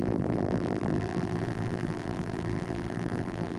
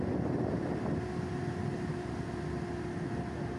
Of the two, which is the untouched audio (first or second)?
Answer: second